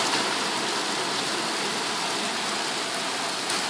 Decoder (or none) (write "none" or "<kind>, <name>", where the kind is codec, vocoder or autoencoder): none